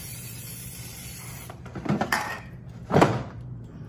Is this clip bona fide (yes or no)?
no